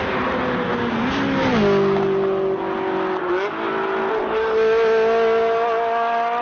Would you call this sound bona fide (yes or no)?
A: yes